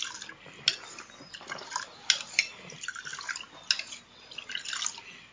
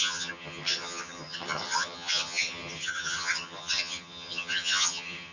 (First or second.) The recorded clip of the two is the first